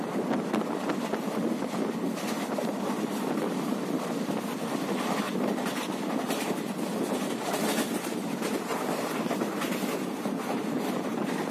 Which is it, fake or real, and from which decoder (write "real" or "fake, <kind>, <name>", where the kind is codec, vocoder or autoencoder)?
real